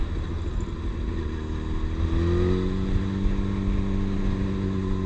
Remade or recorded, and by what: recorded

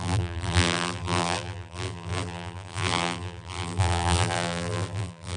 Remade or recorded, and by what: remade, vocoder, BigVGAN v2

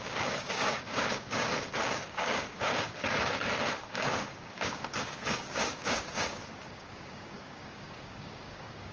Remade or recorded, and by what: remade, codec, DAC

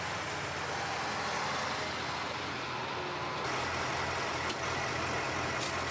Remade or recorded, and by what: recorded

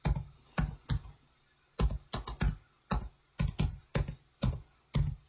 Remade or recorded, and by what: recorded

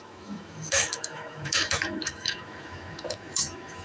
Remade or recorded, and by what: remade, autoencoder, DAC-VAE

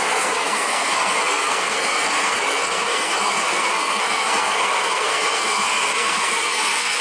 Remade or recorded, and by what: remade, codec, SNAC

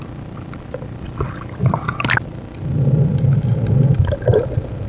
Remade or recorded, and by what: recorded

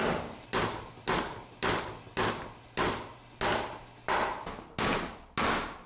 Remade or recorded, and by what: recorded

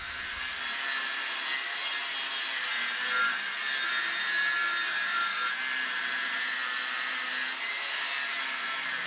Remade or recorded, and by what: recorded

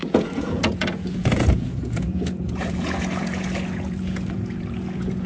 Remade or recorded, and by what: remade, vocoder, Vocos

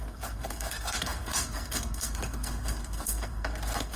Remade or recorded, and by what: remade, codec, SNAC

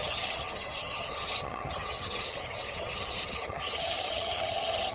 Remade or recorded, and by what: remade, vocoder, HiFi-GAN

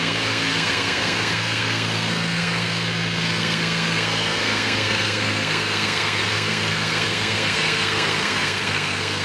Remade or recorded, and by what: remade, codec, SNAC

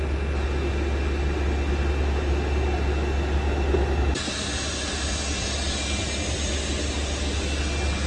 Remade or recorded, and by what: recorded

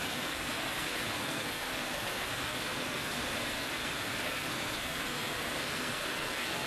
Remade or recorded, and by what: remade, codec, SNAC